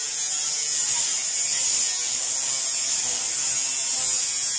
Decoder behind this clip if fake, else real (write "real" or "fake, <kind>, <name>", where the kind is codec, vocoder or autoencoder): real